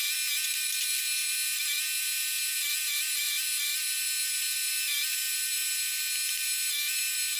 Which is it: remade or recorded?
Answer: recorded